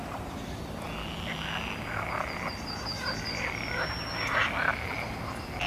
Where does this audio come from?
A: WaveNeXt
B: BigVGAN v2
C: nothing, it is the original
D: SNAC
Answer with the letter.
C